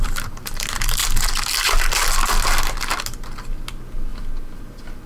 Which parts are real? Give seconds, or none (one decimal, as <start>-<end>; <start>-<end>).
0.0-5.1